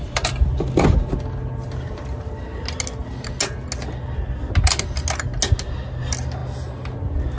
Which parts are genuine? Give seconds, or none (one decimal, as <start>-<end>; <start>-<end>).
0.0-7.4